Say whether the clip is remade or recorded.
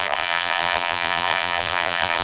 remade